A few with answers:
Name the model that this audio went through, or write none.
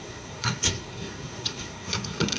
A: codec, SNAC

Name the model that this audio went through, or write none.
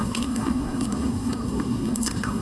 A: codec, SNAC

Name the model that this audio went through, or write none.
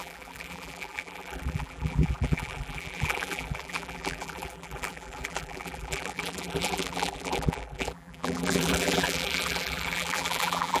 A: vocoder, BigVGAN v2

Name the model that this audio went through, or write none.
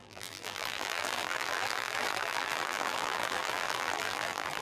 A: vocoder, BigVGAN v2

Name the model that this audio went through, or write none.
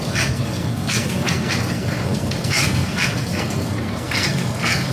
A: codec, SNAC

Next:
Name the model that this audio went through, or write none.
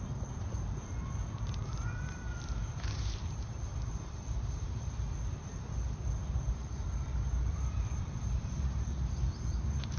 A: vocoder, BigVGAN v2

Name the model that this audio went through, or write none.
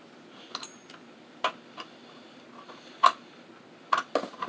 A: none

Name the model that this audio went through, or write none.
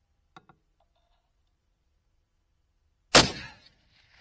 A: none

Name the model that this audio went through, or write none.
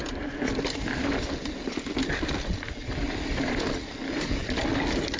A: none